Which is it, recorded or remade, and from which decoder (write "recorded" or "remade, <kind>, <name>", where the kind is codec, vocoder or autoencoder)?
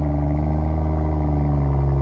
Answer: recorded